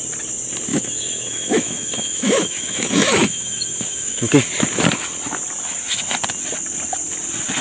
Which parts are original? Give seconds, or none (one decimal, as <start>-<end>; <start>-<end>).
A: 0.0-0.7; 4.3-7.6